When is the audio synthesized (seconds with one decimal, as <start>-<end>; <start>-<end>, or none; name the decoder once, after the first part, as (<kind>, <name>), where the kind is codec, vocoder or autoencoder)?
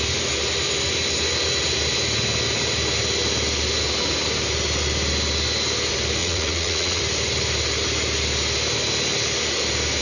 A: 6.2-7.0 (vocoder, Vocos)